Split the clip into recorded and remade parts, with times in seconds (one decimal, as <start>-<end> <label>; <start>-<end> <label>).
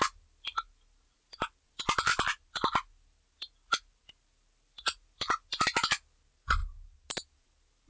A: 0.0-7.9 recorded